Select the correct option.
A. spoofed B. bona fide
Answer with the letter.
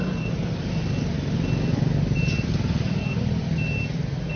B